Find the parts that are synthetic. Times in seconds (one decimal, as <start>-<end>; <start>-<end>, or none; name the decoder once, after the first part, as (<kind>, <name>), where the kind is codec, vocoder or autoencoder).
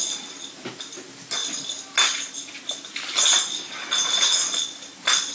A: none